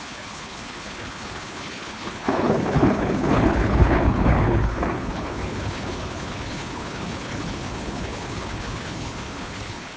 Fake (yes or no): yes